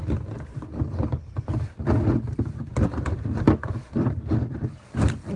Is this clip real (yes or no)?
yes